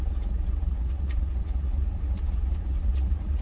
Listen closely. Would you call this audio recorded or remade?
remade